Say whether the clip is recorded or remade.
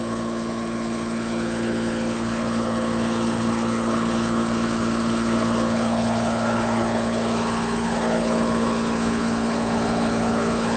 remade